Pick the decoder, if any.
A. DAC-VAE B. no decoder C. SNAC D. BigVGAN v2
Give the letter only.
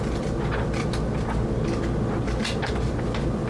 B